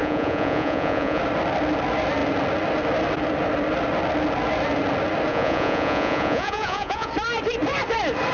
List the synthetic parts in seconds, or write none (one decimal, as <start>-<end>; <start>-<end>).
0.0-1.2; 5.3-7.1